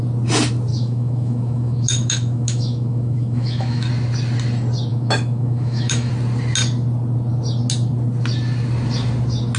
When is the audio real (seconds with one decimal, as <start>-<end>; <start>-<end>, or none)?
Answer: 0.0-0.7; 3.9-4.9; 6.1-9.6